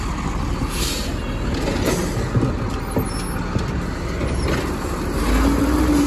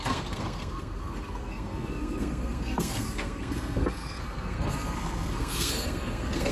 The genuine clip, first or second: first